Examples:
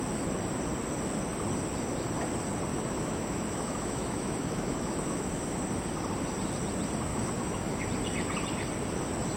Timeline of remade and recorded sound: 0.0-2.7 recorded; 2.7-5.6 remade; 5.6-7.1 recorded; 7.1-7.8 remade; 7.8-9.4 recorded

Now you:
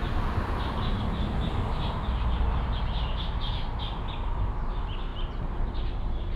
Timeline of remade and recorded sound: 0.0-6.4 recorded

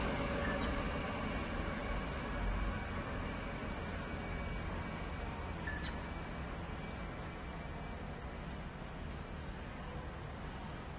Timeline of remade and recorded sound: 0.0-11.0 recorded

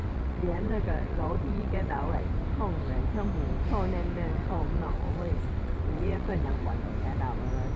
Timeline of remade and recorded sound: 0.0-2.2 remade; 2.2-4.3 recorded; 4.3-6.7 remade; 6.7-7.8 recorded

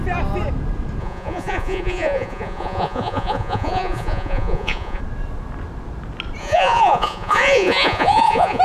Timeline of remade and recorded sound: 0.0-1.0 recorded; 1.0-5.0 remade; 5.0-6.4 recorded; 6.4-8.6 remade

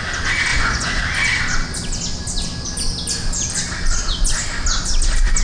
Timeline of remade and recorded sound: 0.0-0.5 recorded; 0.5-1.0 remade; 1.0-5.4 recorded